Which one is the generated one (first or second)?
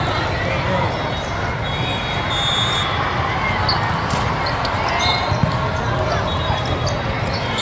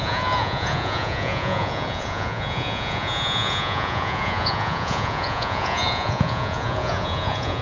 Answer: second